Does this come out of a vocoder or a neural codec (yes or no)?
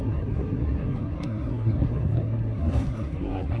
yes